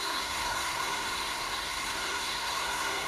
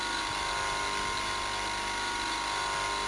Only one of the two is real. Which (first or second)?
second